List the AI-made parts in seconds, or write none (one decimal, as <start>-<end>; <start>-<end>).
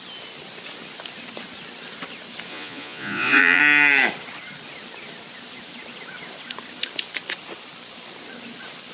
2.5-3.6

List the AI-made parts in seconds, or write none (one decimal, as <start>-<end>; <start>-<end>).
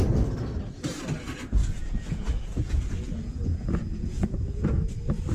1.6-4.8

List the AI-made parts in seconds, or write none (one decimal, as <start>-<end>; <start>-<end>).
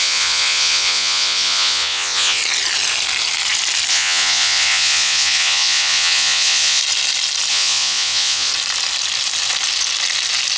0.0-2.4; 3.9-6.8; 7.5-8.5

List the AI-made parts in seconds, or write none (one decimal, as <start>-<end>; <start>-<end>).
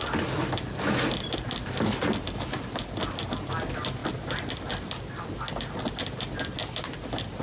none